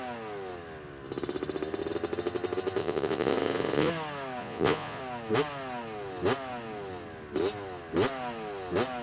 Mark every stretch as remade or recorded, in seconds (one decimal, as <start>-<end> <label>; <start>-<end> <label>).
0.0-2.8 recorded; 2.8-3.9 remade; 3.9-4.4 recorded; 4.4-5.0 remade; 5.0-9.0 recorded